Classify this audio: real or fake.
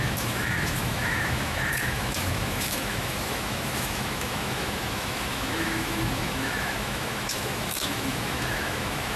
fake